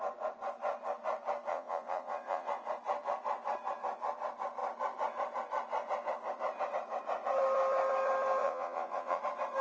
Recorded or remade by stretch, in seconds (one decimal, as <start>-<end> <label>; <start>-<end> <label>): 0.0-1.5 recorded; 1.5-2.5 remade; 2.5-8.4 recorded; 8.4-9.2 remade; 9.2-9.6 recorded